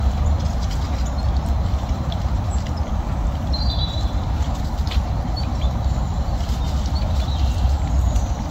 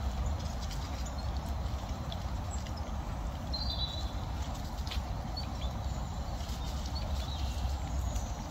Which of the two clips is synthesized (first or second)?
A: first